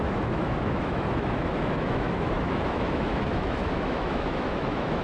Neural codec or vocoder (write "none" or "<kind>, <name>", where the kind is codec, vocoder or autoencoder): autoencoder, DAC-VAE